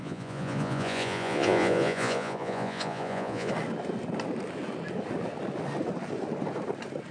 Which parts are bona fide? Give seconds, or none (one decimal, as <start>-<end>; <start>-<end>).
3.5-7.1